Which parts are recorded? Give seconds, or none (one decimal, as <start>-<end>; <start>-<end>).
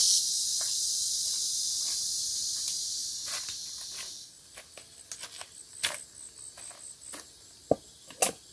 0.0-8.5